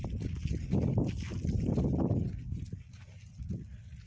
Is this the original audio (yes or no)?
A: yes